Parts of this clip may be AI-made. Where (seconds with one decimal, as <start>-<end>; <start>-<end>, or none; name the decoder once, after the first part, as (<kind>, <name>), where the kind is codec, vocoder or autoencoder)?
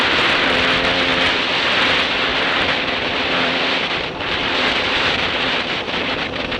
2.3-5.5 (vocoder, BigVGAN v2)